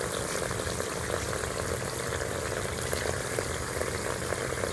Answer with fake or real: real